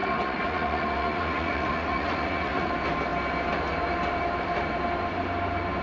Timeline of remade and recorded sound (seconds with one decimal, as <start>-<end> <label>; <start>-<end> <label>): 0.0-2.7 remade; 2.7-5.8 recorded